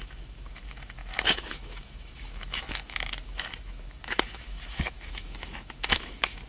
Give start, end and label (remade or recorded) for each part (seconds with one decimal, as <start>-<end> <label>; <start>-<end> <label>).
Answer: 0.0-6.5 remade